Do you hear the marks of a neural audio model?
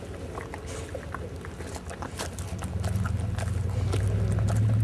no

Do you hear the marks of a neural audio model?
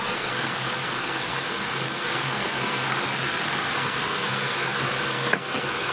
yes